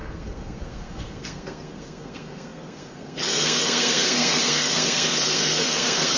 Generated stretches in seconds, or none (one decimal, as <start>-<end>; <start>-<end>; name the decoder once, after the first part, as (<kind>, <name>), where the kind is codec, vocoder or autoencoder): 0.0-6.2 (codec, SNAC)